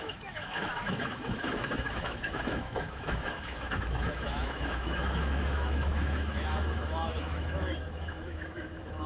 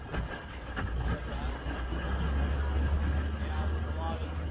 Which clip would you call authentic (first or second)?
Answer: second